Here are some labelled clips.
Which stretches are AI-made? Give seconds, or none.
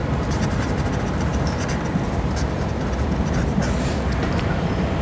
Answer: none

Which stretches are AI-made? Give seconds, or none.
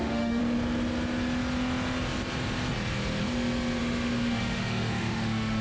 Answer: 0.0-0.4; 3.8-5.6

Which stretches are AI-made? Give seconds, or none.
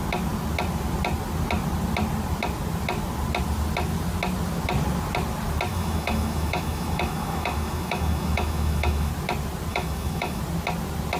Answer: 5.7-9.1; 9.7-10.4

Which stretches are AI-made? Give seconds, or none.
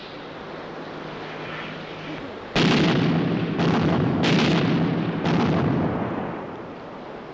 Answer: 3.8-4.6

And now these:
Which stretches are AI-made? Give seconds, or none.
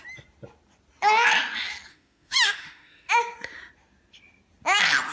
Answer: 1.9-3.1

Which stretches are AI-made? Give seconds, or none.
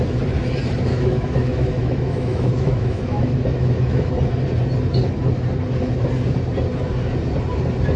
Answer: 0.9-4.1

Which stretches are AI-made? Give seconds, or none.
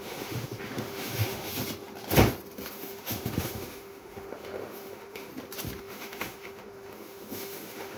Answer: 0.0-1.5; 2.7-5.3; 5.8-8.0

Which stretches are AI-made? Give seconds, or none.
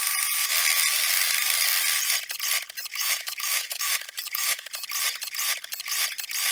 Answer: 2.9-4.7